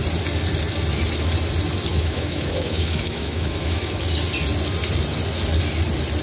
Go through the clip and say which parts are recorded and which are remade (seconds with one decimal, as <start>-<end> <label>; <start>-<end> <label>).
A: 0.0-1.9 recorded; 1.9-4.0 remade; 4.0-6.2 recorded